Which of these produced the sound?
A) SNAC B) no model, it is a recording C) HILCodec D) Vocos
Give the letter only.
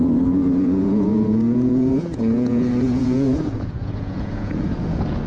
D